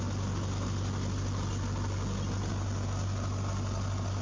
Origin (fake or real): real